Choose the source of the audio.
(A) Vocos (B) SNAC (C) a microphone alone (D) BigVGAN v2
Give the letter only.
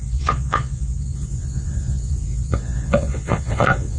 A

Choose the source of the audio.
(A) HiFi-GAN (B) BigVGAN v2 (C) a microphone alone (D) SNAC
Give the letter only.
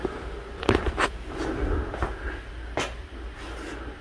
C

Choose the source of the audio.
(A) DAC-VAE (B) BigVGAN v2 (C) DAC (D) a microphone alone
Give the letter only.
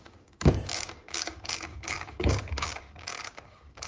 C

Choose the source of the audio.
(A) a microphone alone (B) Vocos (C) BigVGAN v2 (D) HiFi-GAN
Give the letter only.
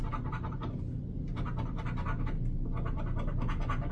A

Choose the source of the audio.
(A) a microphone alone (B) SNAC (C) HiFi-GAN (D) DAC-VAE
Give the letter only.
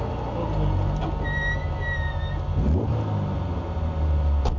A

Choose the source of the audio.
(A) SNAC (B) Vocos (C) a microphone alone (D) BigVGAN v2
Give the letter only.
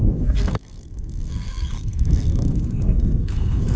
A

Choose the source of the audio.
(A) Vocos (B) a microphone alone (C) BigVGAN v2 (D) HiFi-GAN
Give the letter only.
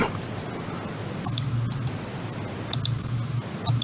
B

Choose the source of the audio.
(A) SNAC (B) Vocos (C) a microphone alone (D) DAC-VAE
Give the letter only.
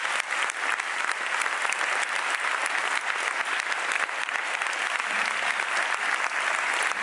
C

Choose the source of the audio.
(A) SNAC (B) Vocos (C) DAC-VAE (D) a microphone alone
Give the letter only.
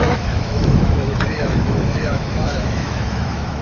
C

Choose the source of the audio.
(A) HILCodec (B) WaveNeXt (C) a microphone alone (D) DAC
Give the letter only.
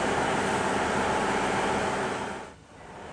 C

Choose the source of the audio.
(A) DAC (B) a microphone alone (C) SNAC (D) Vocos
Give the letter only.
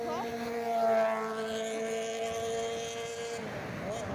B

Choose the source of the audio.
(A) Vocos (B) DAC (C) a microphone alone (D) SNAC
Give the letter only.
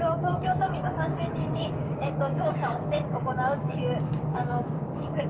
B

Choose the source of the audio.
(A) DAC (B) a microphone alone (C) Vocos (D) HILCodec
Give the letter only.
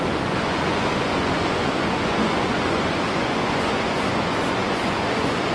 C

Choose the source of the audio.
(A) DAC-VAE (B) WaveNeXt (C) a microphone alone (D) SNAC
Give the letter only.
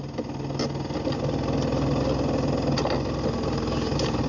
C